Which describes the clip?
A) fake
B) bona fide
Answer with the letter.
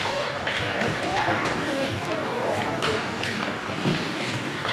A